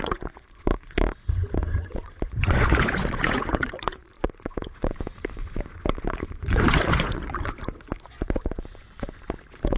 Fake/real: fake